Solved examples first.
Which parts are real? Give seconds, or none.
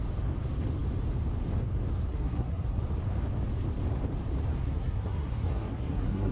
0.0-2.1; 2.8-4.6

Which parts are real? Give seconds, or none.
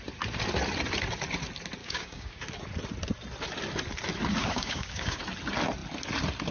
0.0-1.8; 2.4-4.4; 5.2-6.5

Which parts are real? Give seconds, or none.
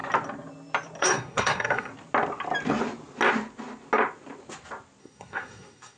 0.0-1.0; 1.9-5.0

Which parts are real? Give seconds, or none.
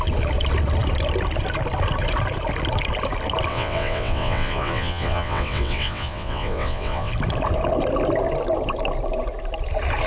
0.0-3.5; 7.1-10.1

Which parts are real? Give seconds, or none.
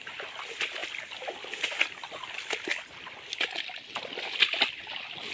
0.0-5.3